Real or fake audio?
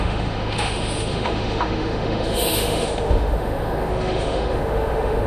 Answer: fake